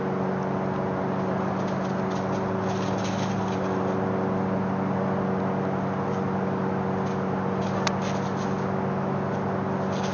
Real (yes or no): yes